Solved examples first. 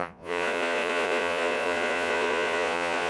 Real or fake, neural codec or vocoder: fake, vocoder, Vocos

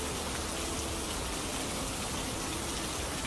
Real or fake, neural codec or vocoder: real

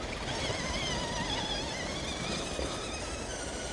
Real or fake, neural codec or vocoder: real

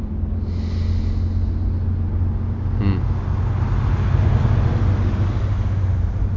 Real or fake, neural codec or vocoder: real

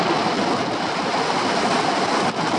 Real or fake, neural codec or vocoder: real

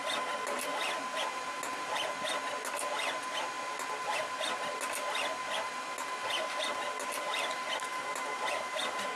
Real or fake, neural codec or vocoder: real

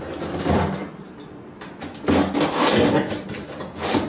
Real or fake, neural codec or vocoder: real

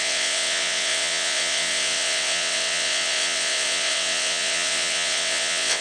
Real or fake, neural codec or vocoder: fake, vocoder, WaveNeXt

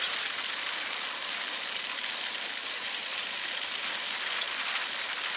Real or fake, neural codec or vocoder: real